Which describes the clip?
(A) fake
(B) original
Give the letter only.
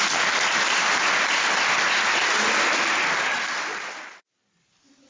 B